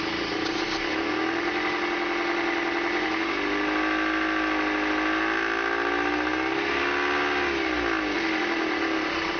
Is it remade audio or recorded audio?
recorded